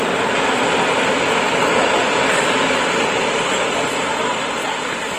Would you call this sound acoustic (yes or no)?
yes